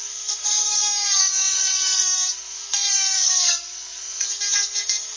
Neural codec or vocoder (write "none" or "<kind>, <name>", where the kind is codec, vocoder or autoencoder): codec, SNAC